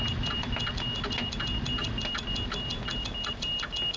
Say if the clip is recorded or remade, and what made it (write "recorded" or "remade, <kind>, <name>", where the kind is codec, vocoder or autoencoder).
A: recorded